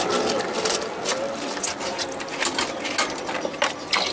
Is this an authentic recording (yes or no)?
yes